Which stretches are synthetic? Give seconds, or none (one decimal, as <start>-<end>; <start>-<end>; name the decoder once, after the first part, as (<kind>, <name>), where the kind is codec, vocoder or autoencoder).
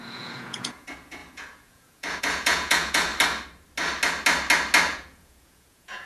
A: 0.0-3.1 (vocoder, Vocos); 4.9-6.1